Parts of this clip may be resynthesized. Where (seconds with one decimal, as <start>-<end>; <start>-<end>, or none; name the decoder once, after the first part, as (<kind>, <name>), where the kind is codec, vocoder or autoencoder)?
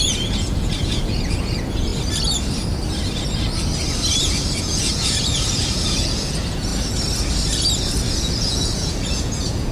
0.0-1.9 (vocoder, Vocos); 4.6-6.7; 8.2-9.7